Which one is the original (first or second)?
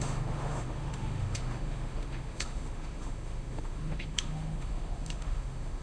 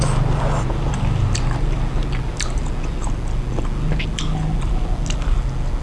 second